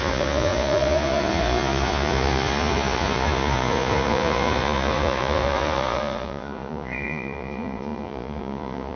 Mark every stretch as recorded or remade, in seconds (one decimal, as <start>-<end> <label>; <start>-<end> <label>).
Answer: 0.0-9.0 remade